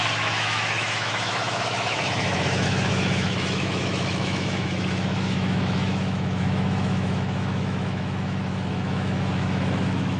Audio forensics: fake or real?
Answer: fake